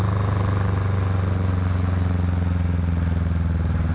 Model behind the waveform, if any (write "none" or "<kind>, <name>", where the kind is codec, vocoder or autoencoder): none